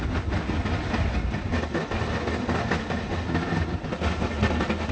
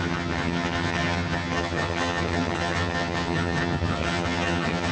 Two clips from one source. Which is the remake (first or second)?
second